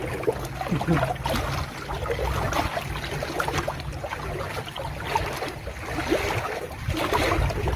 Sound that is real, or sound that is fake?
real